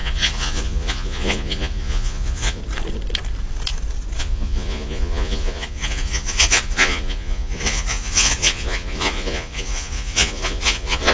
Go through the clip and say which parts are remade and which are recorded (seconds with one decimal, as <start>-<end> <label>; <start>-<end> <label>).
0.0-2.6 remade; 2.6-4.2 recorded; 4.2-11.1 remade